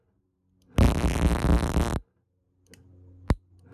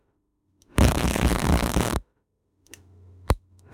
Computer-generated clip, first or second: second